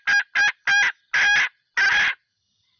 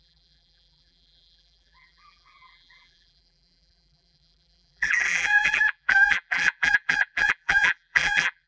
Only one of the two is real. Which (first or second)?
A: first